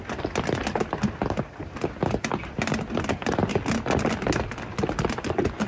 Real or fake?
real